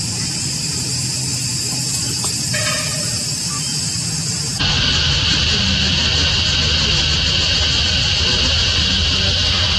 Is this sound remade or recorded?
recorded